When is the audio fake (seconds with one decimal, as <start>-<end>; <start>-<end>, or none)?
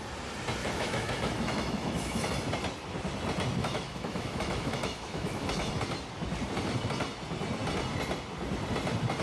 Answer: 0.6-2.3; 3.6-5.7